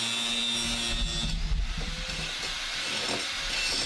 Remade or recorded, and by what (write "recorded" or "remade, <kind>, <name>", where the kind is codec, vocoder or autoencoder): recorded